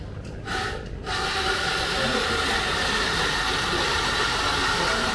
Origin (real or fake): real